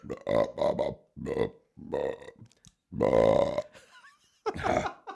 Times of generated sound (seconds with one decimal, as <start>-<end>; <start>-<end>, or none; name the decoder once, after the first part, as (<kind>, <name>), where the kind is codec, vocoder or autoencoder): none

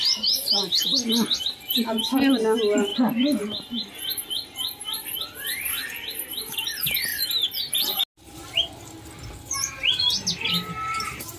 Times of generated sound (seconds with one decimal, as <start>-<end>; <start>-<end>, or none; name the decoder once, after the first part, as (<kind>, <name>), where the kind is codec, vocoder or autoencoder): none

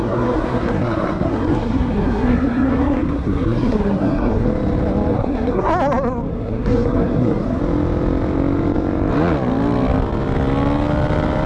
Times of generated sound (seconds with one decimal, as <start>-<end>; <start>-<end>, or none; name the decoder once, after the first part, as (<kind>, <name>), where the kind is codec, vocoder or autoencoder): 0.0-4.5 (codec, SNAC); 5.1-5.7; 6.3-7.6

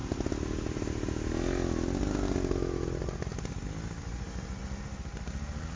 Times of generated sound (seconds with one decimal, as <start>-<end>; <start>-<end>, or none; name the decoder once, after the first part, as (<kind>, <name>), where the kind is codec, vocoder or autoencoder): none

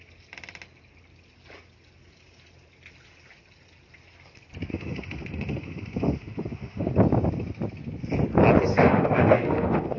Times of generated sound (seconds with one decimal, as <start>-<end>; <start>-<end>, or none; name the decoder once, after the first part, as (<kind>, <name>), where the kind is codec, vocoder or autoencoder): 4.7-6.9 (autoencoder, DAC-VAE); 8.7-10.0

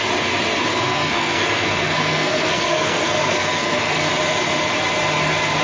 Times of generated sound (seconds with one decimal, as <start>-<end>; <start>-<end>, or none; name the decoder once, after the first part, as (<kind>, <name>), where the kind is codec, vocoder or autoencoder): 0.7-4.1 (codec, SNAC)

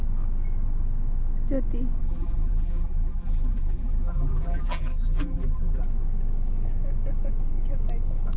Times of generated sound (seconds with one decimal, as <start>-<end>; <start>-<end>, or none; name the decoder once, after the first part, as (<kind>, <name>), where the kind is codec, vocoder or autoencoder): 2.0-5.8 (vocoder, BigVGAN v2)